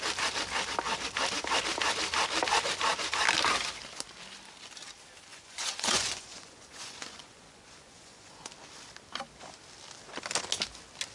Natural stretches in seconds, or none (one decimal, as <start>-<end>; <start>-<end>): 0.0-5.3; 8.5-11.1